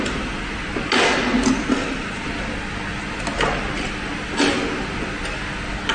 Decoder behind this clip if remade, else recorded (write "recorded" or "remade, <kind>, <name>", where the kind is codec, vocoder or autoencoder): recorded